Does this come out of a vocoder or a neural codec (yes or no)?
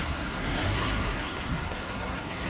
yes